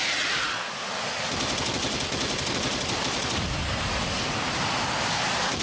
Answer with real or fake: real